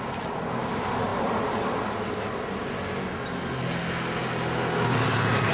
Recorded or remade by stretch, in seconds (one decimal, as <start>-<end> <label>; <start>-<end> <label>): 0.0-5.5 recorded